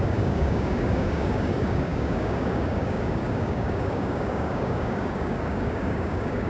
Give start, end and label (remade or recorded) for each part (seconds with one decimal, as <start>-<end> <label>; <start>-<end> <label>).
0.0-6.5 remade